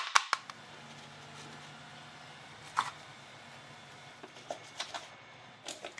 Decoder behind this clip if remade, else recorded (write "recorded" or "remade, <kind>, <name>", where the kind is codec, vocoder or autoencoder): recorded